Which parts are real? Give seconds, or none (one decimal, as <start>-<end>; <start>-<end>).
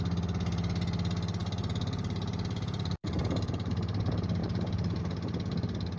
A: 0.0-1.4; 3.7-4.4; 5.0-6.0